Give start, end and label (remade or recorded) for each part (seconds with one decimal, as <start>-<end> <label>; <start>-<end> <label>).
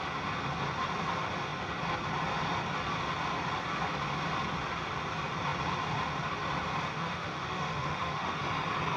0.0-6.9 recorded; 6.9-8.4 remade; 8.4-9.0 recorded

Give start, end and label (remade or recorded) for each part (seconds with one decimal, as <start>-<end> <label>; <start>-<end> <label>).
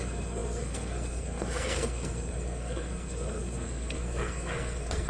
0.0-5.1 remade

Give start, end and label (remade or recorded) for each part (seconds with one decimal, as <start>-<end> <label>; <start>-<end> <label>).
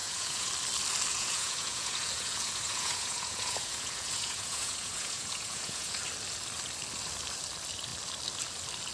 0.0-0.5 remade; 0.5-1.1 recorded; 1.1-6.0 remade; 6.0-8.9 recorded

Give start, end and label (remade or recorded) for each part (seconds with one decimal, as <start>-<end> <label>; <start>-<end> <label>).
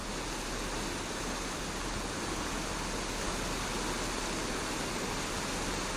0.0-6.0 recorded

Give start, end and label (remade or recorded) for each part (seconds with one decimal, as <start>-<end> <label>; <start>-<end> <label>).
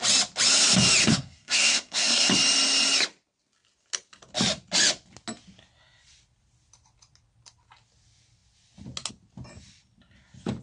0.0-1.0 recorded; 1.0-2.3 remade; 2.3-10.6 recorded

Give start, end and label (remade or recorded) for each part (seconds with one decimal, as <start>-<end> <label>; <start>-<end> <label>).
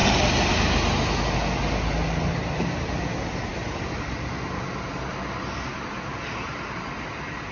0.0-7.5 recorded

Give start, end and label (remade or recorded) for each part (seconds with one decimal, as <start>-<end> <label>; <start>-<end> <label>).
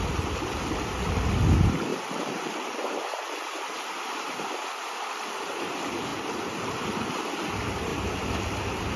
0.0-1.9 recorded; 1.9-3.2 remade; 3.2-6.1 recorded; 6.1-6.6 remade; 6.6-9.0 recorded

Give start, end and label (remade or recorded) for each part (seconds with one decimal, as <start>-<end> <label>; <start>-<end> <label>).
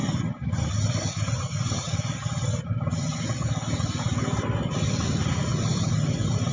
0.0-0.6 remade; 0.6-2.7 recorded; 2.7-3.2 remade; 3.2-5.5 recorded; 5.5-6.5 remade